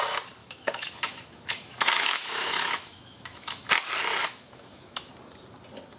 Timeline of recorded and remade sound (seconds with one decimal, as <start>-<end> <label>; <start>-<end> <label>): 0.0-0.4 recorded; 0.4-3.7 remade; 3.7-4.2 recorded; 4.2-5.1 remade; 5.1-6.0 recorded